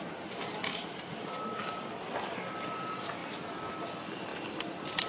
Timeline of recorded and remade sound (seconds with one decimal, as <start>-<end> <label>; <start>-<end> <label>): 0.0-5.1 recorded